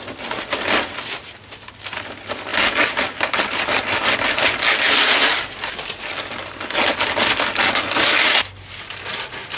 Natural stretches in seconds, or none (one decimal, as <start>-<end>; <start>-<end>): 0.0-9.6